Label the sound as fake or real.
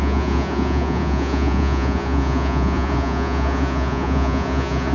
fake